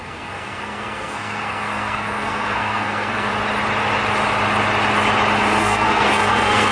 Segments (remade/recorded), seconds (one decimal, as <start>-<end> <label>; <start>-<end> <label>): 0.0-3.3 remade; 3.3-5.6 recorded; 5.6-6.7 remade